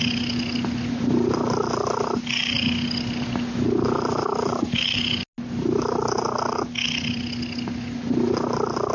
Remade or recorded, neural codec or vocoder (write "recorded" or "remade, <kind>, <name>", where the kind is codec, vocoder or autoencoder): recorded